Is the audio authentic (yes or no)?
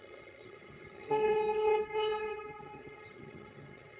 no